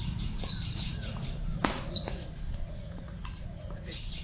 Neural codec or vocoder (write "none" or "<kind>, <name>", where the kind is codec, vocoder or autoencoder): vocoder, Vocos